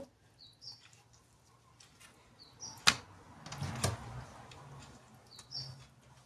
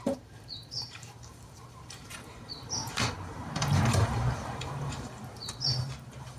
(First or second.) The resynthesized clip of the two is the second